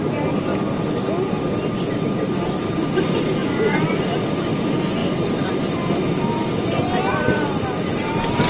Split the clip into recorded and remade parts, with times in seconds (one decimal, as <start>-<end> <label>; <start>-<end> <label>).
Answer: 0.0-0.5 remade; 0.5-1.7 recorded; 1.7-5.0 remade; 5.0-7.0 recorded; 7.0-8.5 remade